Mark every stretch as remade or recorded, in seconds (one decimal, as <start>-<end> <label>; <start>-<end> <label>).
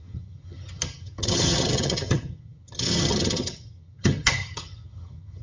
0.0-5.4 remade